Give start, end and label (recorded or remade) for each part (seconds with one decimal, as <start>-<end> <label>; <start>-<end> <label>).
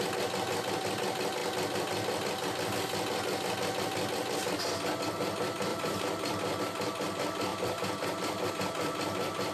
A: 0.0-5.7 recorded; 5.7-6.6 remade; 6.6-7.5 recorded; 7.5-8.5 remade; 8.5-9.5 recorded